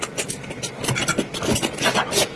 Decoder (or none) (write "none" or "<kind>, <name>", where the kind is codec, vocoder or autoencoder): none